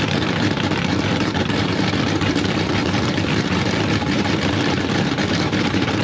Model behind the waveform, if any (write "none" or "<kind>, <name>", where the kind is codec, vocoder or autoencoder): vocoder, BigVGAN v2